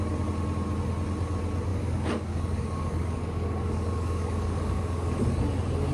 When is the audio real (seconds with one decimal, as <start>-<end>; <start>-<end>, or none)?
0.0-1.7; 5.2-5.9